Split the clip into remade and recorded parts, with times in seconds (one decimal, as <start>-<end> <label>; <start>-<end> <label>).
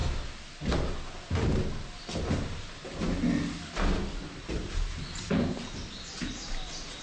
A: 0.0-7.0 recorded